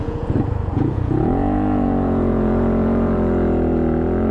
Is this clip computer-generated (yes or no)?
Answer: yes